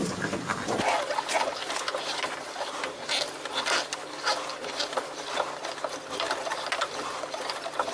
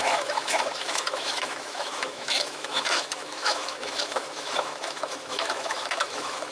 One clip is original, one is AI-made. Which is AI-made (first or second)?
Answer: second